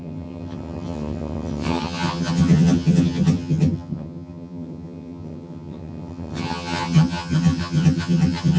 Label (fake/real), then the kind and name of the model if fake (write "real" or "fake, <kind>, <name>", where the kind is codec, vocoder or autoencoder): fake, vocoder, HiFi-GAN